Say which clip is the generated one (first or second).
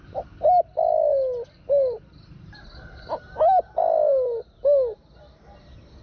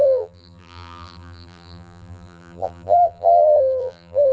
second